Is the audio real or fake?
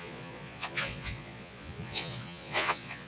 fake